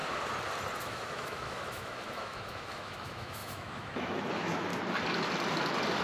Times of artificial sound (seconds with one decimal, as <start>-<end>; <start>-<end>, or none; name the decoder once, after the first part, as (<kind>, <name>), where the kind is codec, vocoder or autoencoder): 0.8-4.7 (autoencoder, DAC-VAE)